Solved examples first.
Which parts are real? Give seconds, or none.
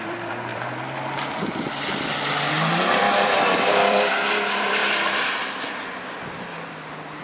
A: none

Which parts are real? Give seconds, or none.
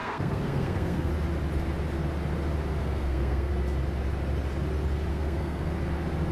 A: 1.1-2.8; 3.5-5.1; 5.7-6.3